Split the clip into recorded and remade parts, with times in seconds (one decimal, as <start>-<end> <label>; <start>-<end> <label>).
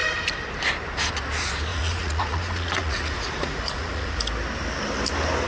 0.0-1.7 recorded; 1.7-4.2 remade; 4.2-5.5 recorded